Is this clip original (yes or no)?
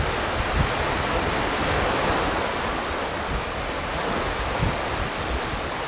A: yes